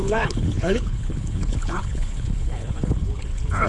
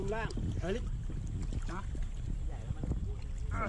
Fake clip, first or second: first